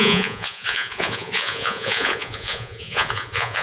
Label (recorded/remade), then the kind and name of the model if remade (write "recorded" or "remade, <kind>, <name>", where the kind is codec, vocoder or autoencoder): remade, vocoder, Vocos